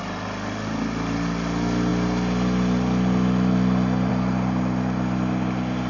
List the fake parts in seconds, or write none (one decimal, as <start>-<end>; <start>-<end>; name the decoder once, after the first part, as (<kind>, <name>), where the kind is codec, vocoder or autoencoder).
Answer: none